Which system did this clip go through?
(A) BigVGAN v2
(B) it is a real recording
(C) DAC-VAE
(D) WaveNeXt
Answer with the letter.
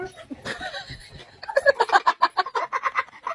B